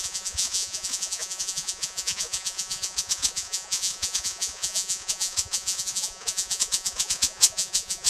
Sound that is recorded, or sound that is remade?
remade